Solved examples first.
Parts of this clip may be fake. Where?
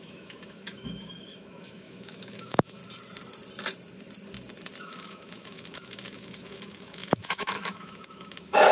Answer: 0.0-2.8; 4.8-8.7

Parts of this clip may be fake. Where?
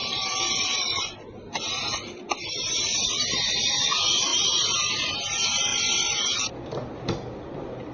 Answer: 0.0-3.6; 5.7-6.5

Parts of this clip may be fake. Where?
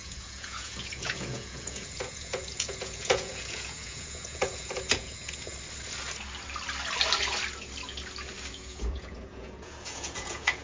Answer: 0.0-5.5; 8.5-10.6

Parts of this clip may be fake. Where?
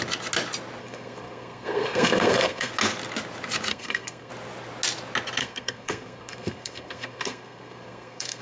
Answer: 0.8-2.7; 3.7-4.3; 5.4-8.4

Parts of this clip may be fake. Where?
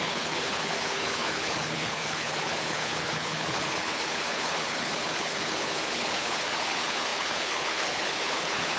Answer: 0.0-8.8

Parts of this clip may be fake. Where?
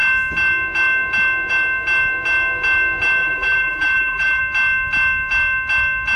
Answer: 3.2-4.4